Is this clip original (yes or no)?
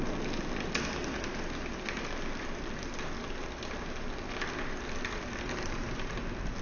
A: yes